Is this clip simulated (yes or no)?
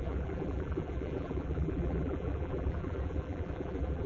yes